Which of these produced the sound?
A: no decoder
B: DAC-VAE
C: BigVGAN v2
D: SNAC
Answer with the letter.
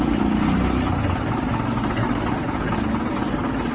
A